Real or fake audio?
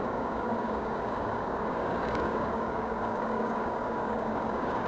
fake